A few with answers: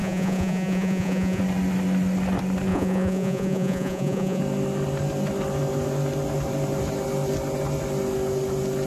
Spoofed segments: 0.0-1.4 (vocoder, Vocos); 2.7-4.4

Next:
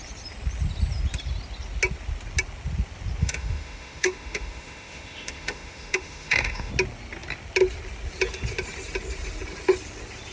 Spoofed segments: 3.2-6.7 (autoencoder, DAC-VAE)

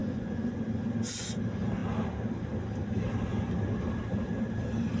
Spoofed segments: 0.0-0.5 (vocoder, Vocos)

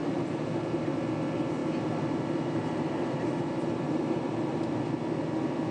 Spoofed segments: 0.0-1.0 (vocoder, BigVGAN v2); 1.6-4.8

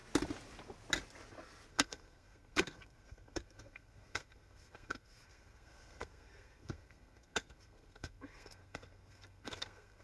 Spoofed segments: 1.7-10.0 (codec, SNAC)

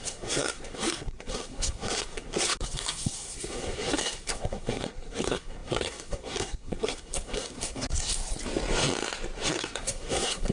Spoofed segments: 0.0-8.2 (codec, SNAC); 9.5-10.5

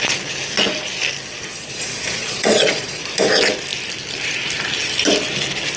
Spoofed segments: 1.5-3.0 (vocoder, Vocos)